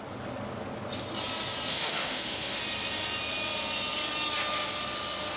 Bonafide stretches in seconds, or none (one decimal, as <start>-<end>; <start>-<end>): 0.0-1.7; 2.6-5.4